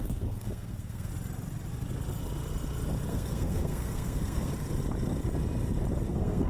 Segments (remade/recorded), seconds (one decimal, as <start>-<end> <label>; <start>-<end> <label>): 0.0-1.1 remade; 1.1-3.1 recorded; 3.1-4.5 remade; 4.5-6.1 recorded; 6.1-6.5 remade